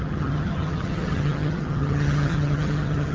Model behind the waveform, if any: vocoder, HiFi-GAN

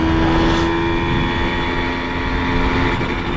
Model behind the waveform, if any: none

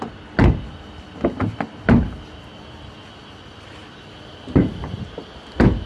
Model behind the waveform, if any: none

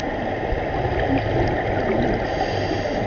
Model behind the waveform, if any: none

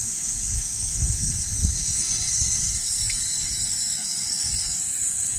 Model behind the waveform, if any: codec, SNAC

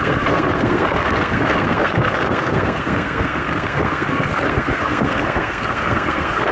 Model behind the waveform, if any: codec, SNAC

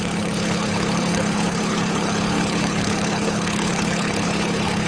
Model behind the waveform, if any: codec, HILCodec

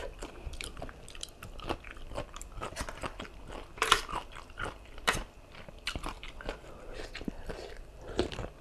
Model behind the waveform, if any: vocoder, BigVGAN v2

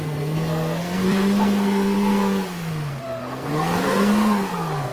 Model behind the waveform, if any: codec, SNAC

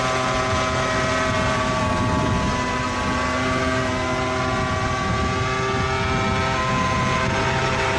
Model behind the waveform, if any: none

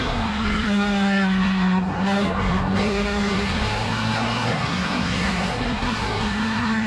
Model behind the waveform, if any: codec, SNAC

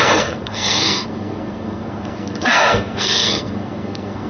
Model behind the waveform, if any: codec, SNAC